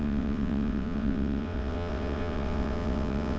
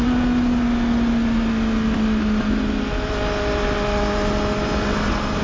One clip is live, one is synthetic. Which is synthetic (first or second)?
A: first